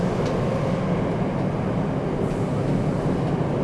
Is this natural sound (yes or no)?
yes